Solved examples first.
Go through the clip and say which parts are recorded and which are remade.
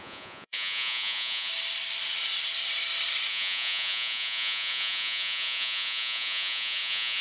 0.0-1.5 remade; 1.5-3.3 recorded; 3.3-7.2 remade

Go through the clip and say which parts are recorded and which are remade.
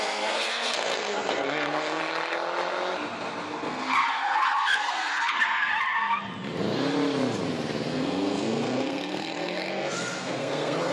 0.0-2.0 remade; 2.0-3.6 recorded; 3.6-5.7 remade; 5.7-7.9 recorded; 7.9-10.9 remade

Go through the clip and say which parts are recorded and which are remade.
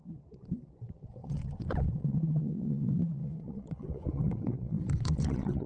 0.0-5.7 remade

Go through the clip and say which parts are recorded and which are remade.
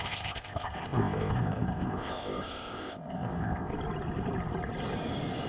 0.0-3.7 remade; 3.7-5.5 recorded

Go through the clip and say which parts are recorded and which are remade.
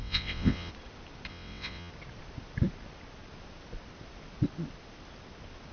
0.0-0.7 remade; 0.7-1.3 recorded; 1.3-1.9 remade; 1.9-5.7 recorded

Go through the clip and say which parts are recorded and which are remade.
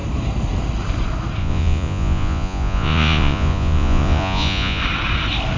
0.0-1.4 recorded; 1.4-4.8 remade; 4.8-5.6 recorded